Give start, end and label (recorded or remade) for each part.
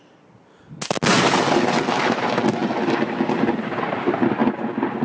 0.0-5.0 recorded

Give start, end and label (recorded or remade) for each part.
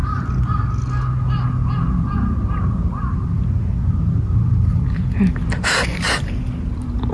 0.0-5.9 recorded; 5.9-7.1 remade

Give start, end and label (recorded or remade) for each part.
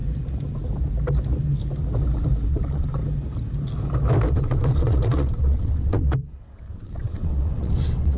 0.0-2.5 recorded; 2.5-3.0 remade; 3.0-4.3 recorded; 4.3-8.2 remade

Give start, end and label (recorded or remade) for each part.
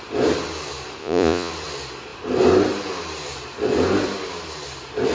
0.0-1.0 recorded; 1.0-1.5 remade; 1.5-5.1 recorded